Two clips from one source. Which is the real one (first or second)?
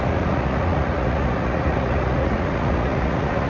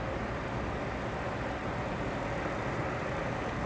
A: second